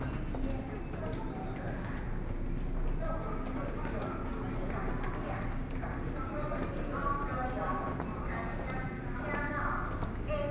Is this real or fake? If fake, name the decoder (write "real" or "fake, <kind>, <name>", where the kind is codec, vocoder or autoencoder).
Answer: real